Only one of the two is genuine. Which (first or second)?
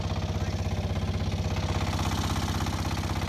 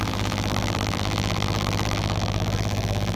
first